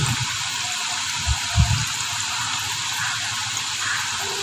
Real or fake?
fake